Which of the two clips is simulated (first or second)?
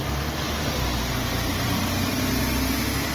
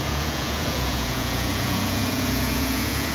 second